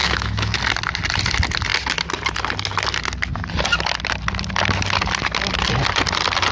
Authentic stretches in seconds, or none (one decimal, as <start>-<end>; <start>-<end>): 0.6-6.5